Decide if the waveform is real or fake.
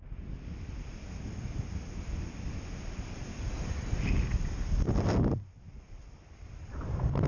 real